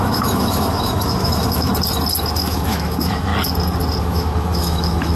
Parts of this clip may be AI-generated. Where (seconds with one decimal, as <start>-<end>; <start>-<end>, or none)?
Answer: 0.0-1.7; 2.4-3.3; 4.0-5.2